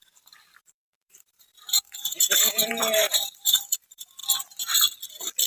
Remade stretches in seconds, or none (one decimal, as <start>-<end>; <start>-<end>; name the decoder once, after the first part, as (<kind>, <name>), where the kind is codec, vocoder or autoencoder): 0.0-4.2 (vocoder, BigVGAN v2)